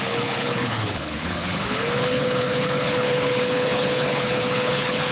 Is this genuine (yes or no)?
no